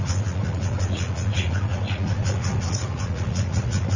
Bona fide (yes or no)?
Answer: no